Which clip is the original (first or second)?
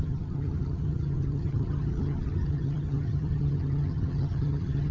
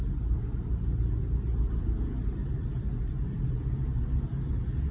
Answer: second